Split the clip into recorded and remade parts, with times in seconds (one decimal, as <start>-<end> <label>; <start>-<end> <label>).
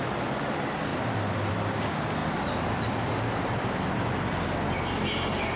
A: 0.0-2.2 recorded; 2.2-4.4 remade; 4.4-5.6 recorded